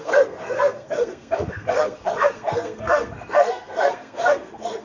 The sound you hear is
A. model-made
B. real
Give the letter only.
A